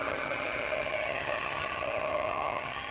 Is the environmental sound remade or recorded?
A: remade